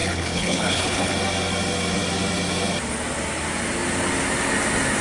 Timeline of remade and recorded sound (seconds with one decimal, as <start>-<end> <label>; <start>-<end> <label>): 0.0-1.1 remade; 1.1-5.0 recorded